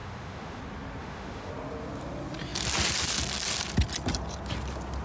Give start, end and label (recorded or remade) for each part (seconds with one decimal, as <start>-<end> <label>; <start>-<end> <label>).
0.0-0.6 remade; 0.6-1.0 recorded; 1.0-1.5 remade; 1.5-5.0 recorded